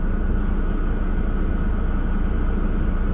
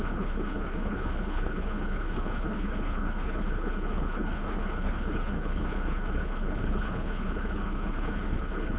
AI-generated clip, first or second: second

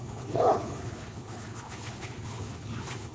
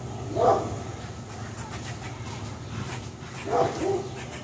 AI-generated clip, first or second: first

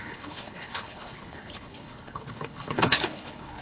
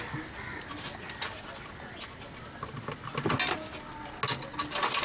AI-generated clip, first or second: first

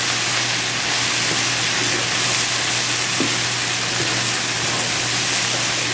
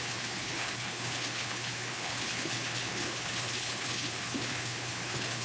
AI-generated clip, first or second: second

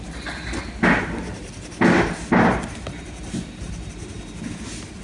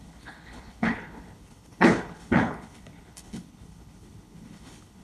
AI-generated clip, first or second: second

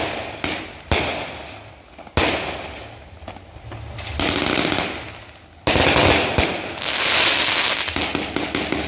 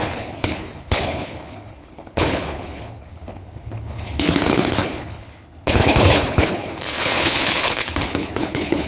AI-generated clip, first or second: second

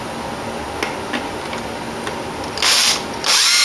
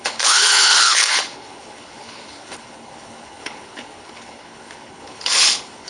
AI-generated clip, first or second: second